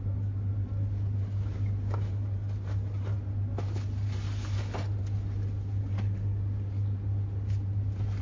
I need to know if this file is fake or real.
real